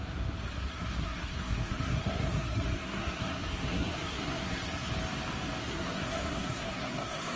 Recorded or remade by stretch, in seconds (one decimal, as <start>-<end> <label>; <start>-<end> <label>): 0.0-0.5 recorded; 0.5-4.9 remade; 4.9-5.6 recorded; 5.6-7.4 remade